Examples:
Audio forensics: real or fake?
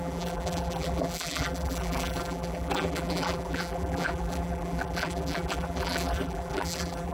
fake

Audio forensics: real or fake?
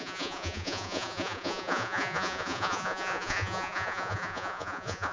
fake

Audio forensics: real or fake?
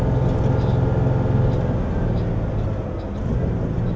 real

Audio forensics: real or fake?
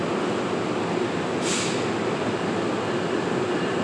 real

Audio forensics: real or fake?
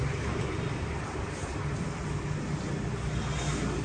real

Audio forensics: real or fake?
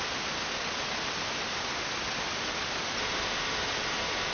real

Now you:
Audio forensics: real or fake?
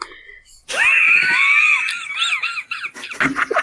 real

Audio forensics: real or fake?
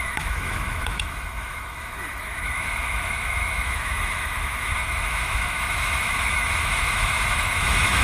fake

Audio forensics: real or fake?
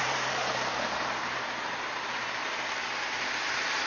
fake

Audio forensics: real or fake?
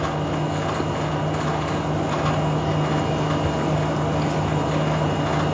real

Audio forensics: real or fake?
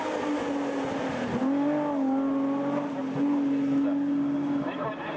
real